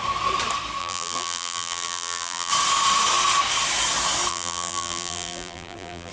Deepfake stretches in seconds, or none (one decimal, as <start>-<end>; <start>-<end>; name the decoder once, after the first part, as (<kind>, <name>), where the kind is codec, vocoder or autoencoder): 0.8-2.5 (vocoder, BigVGAN v2); 4.3-6.1